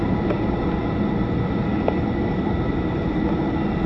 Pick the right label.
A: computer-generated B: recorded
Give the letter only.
B